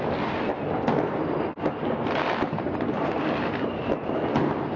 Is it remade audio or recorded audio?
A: recorded